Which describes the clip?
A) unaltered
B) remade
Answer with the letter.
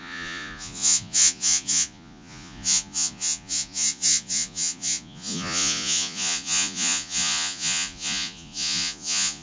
B